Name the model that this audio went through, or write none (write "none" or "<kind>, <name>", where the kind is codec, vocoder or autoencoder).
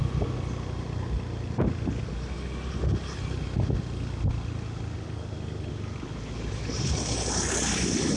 none